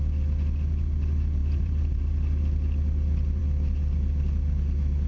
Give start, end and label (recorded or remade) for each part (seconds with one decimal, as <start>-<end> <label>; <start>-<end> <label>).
0.0-1.4 recorded; 1.4-2.0 remade; 2.0-5.1 recorded